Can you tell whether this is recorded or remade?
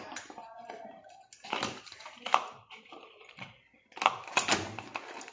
recorded